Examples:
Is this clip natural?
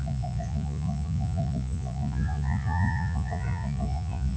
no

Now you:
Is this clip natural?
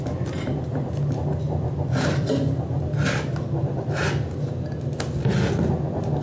yes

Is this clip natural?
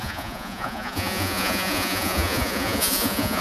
no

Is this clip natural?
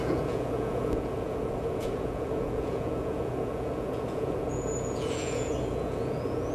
no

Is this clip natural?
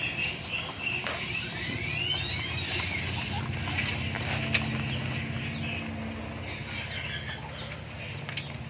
yes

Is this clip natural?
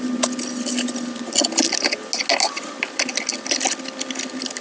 yes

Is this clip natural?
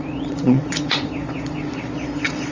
no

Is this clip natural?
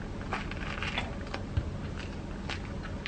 yes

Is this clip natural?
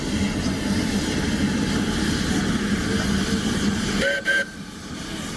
yes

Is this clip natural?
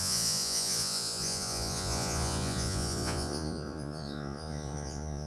no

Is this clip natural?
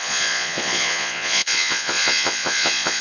no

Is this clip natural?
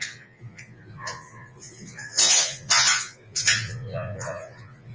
no